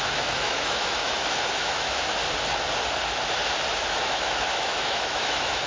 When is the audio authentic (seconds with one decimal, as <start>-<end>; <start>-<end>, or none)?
2.2-3.9